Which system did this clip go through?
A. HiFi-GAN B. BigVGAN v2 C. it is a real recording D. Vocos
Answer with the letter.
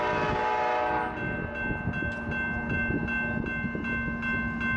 C